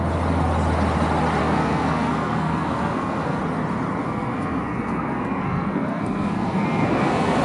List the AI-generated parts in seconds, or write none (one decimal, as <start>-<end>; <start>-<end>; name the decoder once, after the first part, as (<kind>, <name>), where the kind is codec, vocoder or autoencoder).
1.4-3.4 (codec, SNAC); 4.0-7.4